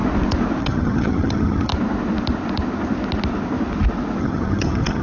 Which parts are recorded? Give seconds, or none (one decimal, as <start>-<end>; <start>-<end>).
0.0-0.6; 1.7-4.2